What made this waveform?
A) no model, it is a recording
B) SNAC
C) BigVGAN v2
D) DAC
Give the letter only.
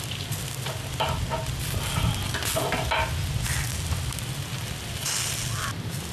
A